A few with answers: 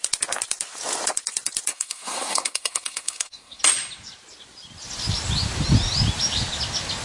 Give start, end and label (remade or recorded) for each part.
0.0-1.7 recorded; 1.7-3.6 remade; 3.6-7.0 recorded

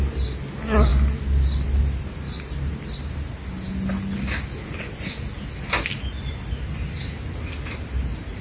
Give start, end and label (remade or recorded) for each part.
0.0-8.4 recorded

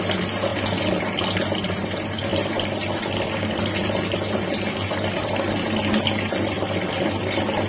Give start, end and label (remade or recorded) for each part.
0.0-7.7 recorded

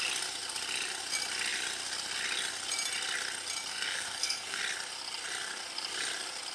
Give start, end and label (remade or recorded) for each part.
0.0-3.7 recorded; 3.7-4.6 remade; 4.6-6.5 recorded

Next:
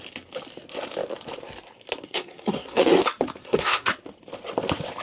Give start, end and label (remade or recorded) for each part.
0.0-2.0 recorded; 2.0-2.8 remade; 2.8-3.4 recorded; 3.4-3.9 remade; 3.9-5.0 recorded

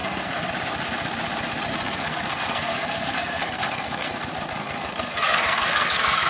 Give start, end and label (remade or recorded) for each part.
0.0-0.5 remade; 0.5-1.7 recorded; 1.7-4.1 remade; 4.1-4.6 recorded; 4.6-6.3 remade

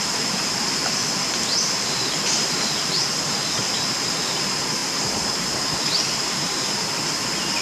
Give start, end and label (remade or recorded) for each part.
0.0-7.6 recorded